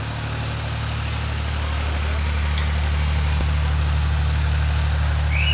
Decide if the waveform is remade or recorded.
recorded